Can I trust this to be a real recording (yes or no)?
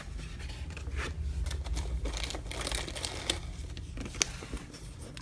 yes